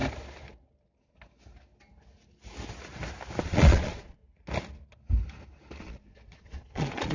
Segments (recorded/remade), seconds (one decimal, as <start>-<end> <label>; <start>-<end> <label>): 0.0-3.4 recorded; 3.4-4.2 remade; 4.2-5.8 recorded; 5.8-7.1 remade